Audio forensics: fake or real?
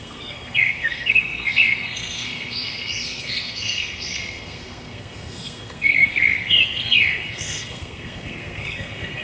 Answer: fake